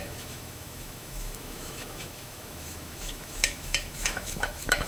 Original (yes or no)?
no